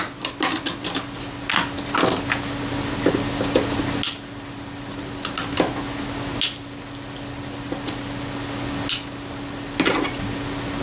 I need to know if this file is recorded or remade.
recorded